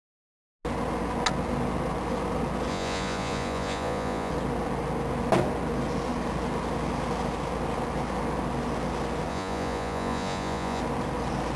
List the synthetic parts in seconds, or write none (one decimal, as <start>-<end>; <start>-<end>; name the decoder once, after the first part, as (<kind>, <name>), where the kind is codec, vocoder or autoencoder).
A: 2.7-4.3 (vocoder, Vocos); 9.3-10.8